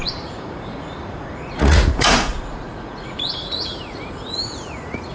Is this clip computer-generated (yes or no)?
yes